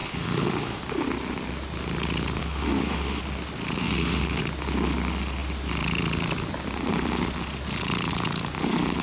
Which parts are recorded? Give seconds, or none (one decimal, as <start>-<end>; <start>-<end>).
0.8-2.4; 3.2-3.8; 4.4-9.0